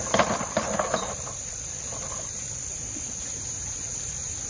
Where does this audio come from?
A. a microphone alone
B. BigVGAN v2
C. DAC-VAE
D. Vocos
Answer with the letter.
A